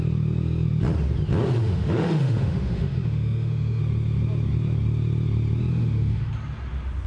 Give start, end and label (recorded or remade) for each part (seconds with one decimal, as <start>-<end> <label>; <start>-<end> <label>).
0.0-1.6 recorded; 1.6-3.8 remade; 3.8-5.7 recorded; 5.7-6.3 remade; 6.3-7.1 recorded